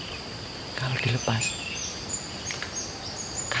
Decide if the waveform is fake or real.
fake